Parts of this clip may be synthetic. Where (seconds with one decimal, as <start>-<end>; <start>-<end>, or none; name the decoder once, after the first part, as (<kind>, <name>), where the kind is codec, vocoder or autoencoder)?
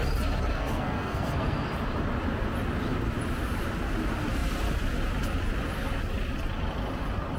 0.5-1.7 (codec, SNAC)